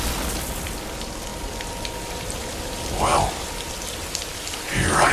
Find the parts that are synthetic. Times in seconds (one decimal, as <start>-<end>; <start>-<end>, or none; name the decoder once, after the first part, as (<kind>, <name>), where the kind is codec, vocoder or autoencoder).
3.1-5.1 (vocoder, BigVGAN v2)